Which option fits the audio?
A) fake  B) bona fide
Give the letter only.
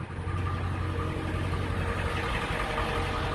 B